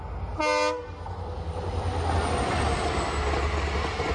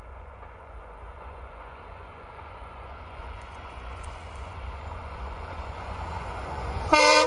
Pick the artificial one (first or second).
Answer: second